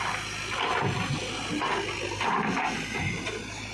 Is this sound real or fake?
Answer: real